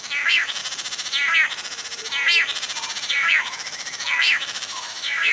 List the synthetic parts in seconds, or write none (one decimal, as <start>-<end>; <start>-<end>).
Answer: 0.0-0.6; 3.1-5.3